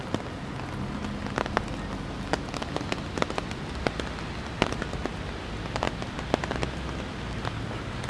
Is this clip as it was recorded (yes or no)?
yes